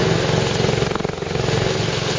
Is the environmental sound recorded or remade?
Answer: recorded